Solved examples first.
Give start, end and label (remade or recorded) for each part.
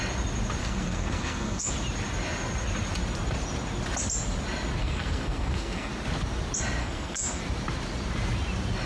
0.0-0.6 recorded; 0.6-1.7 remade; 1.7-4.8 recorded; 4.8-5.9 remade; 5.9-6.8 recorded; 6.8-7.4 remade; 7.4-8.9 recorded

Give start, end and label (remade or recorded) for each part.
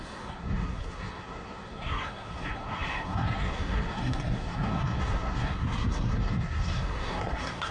0.0-7.7 remade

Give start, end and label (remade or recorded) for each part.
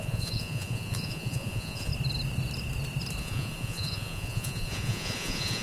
0.0-1.9 remade; 1.9-3.2 recorded; 3.2-5.6 remade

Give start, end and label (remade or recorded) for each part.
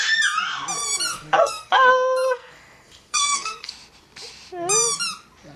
0.0-1.1 recorded; 1.1-3.7 remade; 3.7-5.6 recorded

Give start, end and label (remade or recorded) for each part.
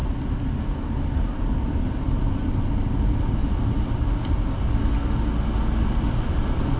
0.0-6.8 recorded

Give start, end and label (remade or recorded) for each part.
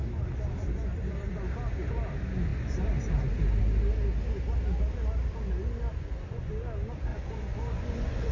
0.0-5.9 recorded; 5.9-6.5 remade; 6.5-7.1 recorded; 7.1-8.3 remade